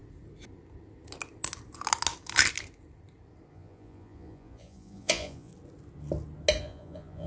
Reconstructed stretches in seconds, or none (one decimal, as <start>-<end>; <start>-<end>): 3.5-5.5; 6.6-7.3